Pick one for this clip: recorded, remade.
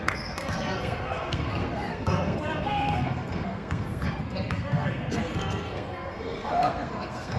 remade